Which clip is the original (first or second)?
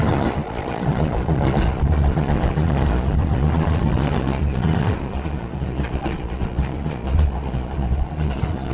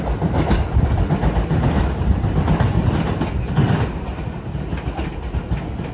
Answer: second